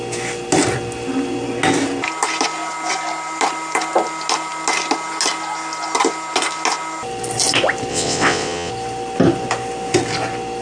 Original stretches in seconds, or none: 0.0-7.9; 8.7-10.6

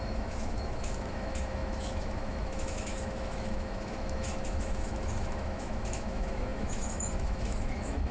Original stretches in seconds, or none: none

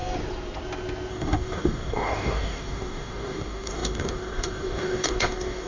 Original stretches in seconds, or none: 0.0-1.1

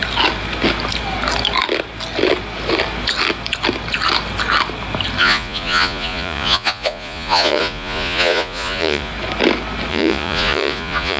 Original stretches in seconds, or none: 0.0-5.2; 9.1-9.9